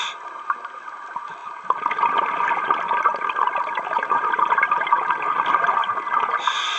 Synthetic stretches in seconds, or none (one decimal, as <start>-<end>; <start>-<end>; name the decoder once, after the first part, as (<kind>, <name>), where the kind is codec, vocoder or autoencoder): none